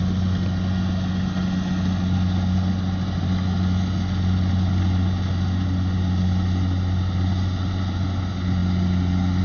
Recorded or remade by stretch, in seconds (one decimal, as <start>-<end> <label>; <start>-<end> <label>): 0.0-9.4 recorded